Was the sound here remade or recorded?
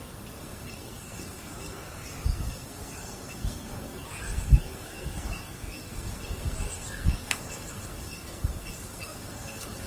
remade